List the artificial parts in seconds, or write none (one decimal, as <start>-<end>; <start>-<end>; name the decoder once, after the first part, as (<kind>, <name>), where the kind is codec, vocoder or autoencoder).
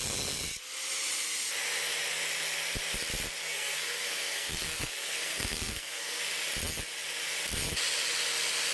3.4-6.2 (codec, SNAC)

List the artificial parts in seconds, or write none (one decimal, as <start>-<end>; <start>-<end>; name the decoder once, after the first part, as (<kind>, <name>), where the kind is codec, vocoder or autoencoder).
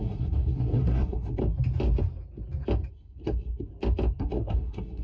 0.0-1.4 (codec, SNAC); 2.9-3.7; 4.2-5.0